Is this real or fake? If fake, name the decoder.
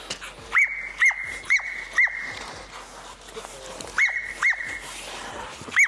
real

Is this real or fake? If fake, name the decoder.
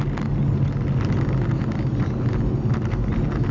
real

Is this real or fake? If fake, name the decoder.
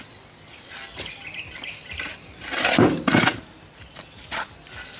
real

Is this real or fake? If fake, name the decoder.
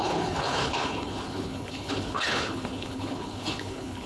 fake, codec, HILCodec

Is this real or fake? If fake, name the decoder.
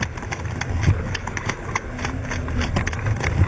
real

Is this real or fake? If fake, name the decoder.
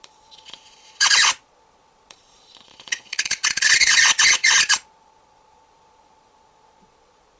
fake, vocoder, Vocos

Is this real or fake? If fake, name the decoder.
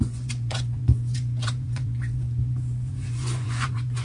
fake, vocoder, Vocos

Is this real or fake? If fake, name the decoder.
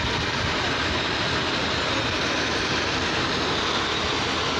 real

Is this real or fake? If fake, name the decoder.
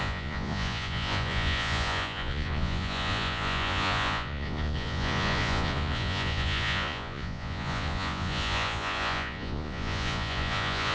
fake, vocoder, Vocos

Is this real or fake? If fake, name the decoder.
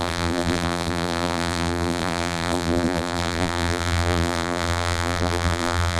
fake, vocoder, BigVGAN v2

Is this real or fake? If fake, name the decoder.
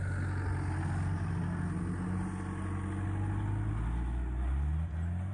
real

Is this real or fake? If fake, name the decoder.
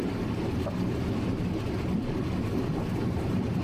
real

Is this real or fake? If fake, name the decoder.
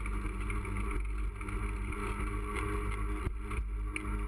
real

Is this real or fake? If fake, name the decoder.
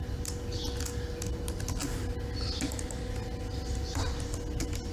real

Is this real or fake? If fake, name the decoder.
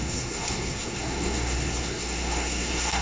fake, codec, SNAC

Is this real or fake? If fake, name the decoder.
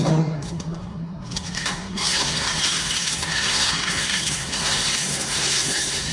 fake, codec, SNAC